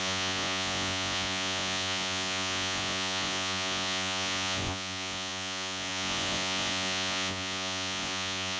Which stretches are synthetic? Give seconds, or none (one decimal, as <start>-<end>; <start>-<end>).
0.0-8.6